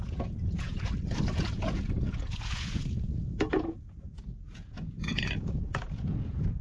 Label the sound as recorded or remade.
remade